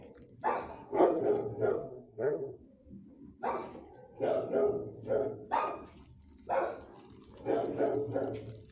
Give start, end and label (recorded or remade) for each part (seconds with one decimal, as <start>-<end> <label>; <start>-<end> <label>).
0.0-0.7 recorded; 0.7-1.2 remade; 1.2-1.7 recorded; 1.7-2.6 remade; 2.6-8.7 recorded